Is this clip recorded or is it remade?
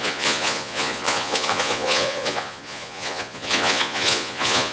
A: remade